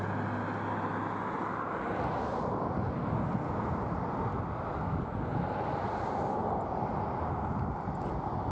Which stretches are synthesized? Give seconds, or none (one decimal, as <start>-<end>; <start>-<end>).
5.3-6.0